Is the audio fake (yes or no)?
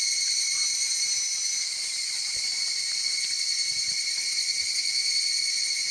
no